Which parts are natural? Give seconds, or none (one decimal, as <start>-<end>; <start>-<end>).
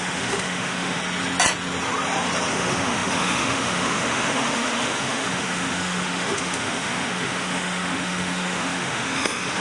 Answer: 1.0-2.5